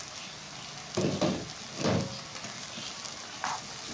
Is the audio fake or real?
real